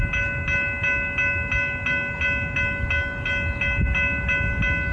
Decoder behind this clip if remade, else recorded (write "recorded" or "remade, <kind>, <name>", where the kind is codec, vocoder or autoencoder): recorded